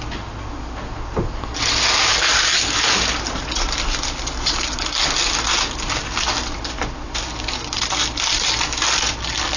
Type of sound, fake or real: real